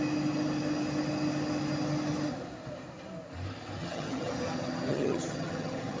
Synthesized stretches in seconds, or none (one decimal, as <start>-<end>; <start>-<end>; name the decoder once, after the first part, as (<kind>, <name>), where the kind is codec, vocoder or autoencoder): 3.8-4.3 (vocoder, HiFi-GAN); 4.9-6.0